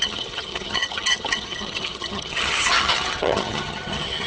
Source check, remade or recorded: remade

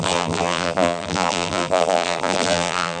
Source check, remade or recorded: remade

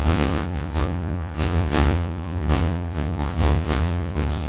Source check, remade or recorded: remade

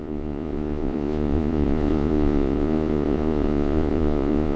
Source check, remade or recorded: remade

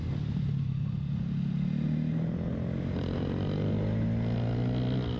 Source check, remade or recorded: recorded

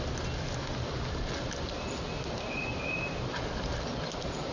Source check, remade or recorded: recorded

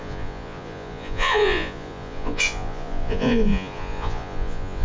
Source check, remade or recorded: remade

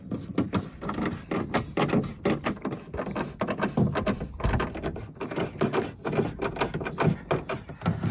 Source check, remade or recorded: recorded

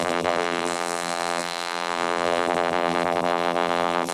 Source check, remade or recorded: remade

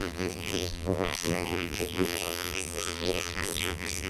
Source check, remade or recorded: remade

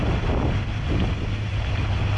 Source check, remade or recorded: recorded